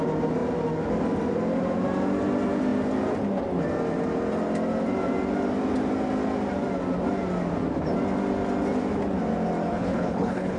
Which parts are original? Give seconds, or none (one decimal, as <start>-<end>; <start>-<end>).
0.0-9.7